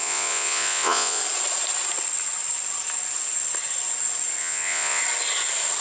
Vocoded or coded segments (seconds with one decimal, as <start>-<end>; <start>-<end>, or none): 0.0-1.2; 4.4-5.0